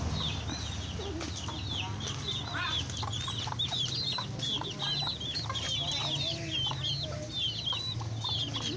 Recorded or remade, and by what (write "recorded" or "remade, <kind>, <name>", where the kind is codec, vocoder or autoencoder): recorded